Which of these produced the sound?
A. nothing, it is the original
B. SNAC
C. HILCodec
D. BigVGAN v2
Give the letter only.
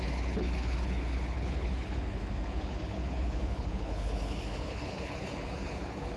C